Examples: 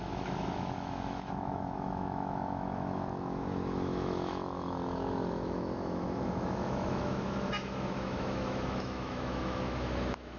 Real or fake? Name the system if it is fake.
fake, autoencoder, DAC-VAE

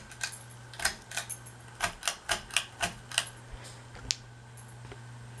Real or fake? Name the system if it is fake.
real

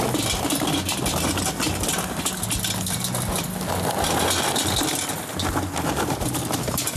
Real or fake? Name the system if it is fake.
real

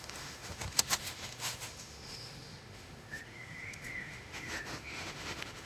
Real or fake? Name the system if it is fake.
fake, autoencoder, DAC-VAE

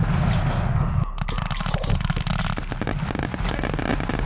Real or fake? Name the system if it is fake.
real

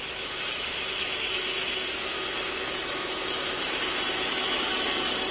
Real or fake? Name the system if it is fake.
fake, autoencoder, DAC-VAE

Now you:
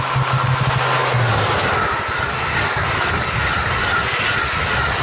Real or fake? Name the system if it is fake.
real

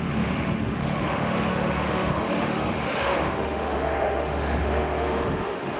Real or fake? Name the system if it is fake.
fake, autoencoder, DAC-VAE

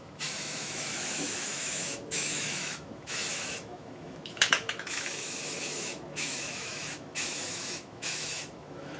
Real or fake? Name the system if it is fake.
fake, autoencoder, DAC-VAE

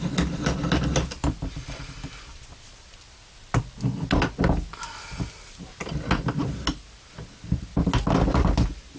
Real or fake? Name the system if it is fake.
real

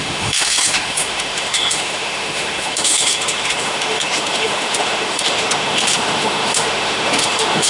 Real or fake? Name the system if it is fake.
fake, autoencoder, DAC-VAE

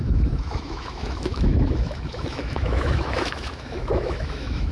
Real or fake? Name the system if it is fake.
fake, autoencoder, DAC-VAE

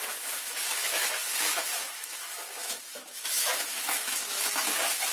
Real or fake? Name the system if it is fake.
fake, autoencoder, DAC-VAE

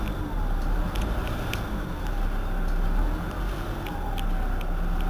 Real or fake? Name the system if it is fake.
real